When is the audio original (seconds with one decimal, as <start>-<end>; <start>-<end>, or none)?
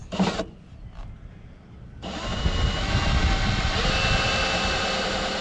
0.0-5.4